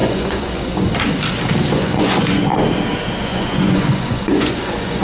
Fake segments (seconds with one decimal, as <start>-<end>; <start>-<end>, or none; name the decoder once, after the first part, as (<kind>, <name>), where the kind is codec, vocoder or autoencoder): 0.0-0.9 (vocoder, Vocos); 1.7-2.5; 3.2-5.0